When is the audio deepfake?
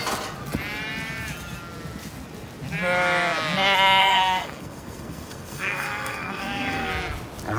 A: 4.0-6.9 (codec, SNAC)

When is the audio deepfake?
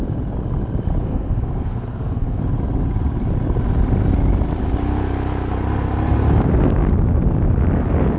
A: 1.0-2.4 (codec, SNAC)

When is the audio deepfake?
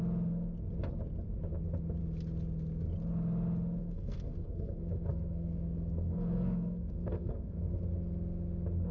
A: 3.8-7.8 (codec, SNAC)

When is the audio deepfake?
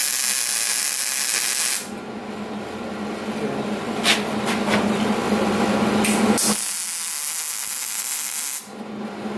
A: none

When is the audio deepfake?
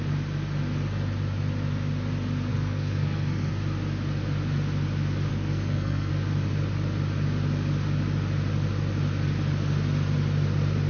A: 2.5-3.5 (codec, SNAC); 5.3-6.1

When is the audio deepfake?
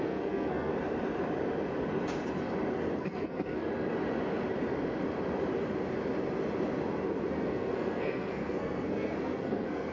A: 0.0-0.7 (codec, SNAC); 2.7-3.7; 7.3-9.9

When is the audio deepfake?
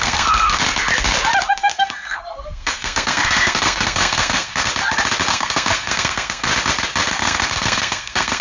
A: 0.0-0.6 (codec, SNAC); 1.5-4.7; 5.3-6.5; 7.1-8.4